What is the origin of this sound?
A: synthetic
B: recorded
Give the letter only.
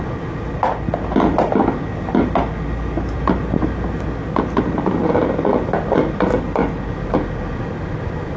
B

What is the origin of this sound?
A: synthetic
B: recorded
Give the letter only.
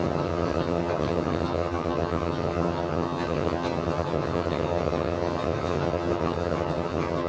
A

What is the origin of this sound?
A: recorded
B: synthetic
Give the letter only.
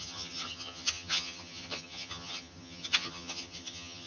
B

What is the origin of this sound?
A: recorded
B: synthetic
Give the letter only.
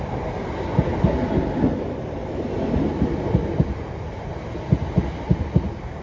A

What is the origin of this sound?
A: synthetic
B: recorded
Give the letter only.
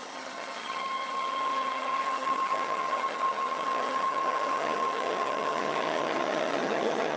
A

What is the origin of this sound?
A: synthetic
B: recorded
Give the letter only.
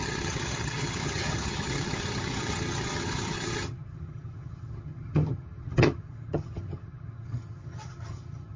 A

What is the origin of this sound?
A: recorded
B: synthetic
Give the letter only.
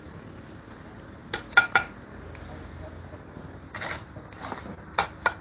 A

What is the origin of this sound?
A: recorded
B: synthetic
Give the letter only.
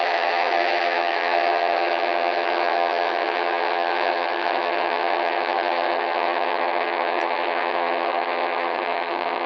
B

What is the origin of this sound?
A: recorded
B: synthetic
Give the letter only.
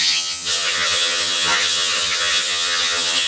B